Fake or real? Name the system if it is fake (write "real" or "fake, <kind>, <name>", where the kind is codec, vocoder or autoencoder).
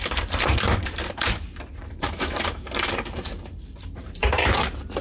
fake, vocoder, BigVGAN v2